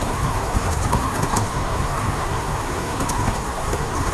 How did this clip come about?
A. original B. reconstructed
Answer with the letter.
B